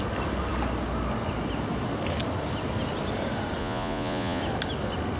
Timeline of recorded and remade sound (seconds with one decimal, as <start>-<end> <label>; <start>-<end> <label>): 0.0-3.6 recorded; 3.6-4.4 remade; 4.4-5.2 recorded